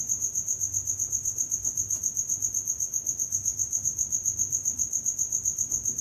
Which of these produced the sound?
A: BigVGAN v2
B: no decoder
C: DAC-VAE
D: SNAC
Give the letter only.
B